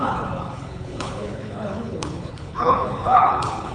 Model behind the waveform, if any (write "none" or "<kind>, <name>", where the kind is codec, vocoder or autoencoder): codec, HILCodec